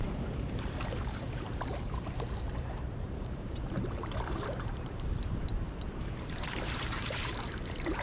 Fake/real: fake